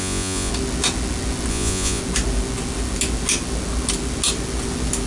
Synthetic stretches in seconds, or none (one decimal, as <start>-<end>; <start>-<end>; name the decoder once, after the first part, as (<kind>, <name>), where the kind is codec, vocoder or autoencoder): 0.0-0.5 (vocoder, Vocos); 1.5-2.0